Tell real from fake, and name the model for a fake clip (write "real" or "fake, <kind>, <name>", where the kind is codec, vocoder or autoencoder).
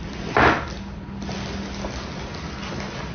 real